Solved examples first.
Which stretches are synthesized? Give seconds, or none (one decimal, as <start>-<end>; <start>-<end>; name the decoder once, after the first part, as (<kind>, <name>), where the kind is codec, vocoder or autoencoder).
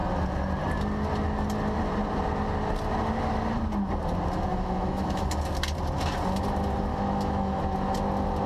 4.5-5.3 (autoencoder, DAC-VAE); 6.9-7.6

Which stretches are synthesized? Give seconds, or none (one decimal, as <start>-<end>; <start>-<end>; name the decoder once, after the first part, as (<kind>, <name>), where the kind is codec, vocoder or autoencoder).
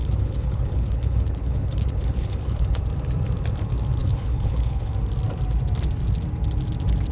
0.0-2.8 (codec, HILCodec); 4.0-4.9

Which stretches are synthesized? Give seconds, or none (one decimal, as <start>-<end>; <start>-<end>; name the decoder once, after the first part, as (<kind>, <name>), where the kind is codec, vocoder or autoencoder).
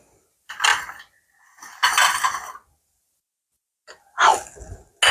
none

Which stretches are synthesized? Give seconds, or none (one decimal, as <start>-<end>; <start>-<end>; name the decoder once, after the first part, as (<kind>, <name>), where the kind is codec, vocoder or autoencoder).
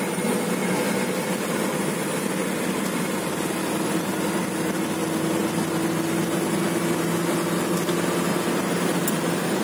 none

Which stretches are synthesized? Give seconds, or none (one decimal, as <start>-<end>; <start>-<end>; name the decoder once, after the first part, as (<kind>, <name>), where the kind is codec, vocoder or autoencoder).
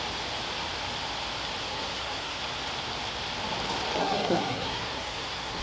1.7-2.4 (codec, SNAC); 4.0-5.6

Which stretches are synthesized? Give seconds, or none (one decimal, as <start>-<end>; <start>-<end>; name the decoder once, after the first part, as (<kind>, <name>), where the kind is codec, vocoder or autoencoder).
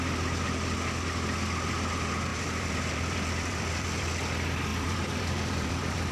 2.3-4.1 (vocoder, BigVGAN v2); 4.7-6.1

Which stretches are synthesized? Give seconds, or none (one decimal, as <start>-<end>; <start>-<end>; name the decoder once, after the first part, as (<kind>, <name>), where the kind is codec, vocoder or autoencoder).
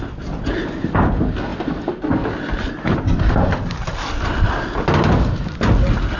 none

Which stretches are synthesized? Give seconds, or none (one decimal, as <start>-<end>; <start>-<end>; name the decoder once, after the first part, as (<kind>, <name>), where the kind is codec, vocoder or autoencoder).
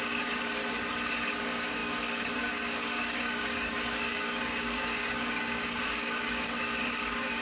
0.0-0.6 (codec, DAC); 1.4-7.4